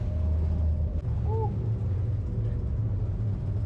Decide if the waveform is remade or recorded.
recorded